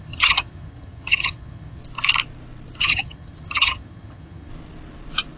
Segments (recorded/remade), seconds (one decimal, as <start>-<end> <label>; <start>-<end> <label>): 0.0-1.8 remade; 1.8-2.8 recorded; 2.8-4.5 remade; 4.5-5.4 recorded